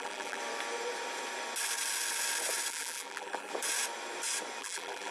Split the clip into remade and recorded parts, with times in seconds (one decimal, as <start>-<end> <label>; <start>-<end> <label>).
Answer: 0.0-0.4 remade; 0.4-2.7 recorded; 2.7-3.5 remade; 3.5-4.6 recorded; 4.6-5.1 remade